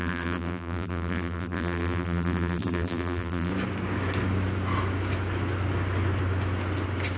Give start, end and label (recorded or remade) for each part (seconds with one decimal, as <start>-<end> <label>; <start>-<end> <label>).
0.0-3.5 remade; 3.5-7.2 recorded